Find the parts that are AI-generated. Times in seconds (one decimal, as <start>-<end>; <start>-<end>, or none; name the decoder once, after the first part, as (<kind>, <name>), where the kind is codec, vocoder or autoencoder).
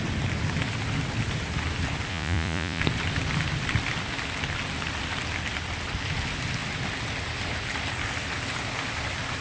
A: 2.1-2.8 (vocoder, Vocos)